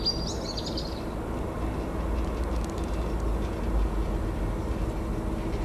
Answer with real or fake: real